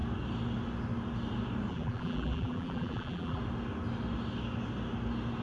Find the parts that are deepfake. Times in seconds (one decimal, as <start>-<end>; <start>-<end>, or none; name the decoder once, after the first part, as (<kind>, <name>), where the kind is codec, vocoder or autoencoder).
1.7-3.4 (vocoder, BigVGAN v2)